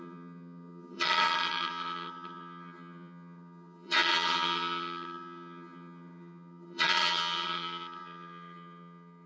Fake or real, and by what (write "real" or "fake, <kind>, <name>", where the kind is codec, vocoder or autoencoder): fake, vocoder, HiFi-GAN